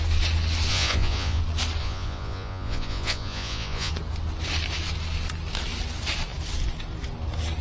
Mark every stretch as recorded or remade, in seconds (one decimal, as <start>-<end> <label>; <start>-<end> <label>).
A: 0.0-0.7 recorded; 0.7-1.4 remade; 1.4-1.8 recorded; 1.8-3.9 remade; 3.9-7.6 recorded